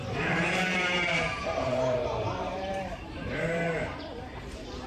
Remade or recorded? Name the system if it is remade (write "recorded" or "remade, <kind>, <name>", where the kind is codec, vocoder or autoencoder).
remade, vocoder, BigVGAN v2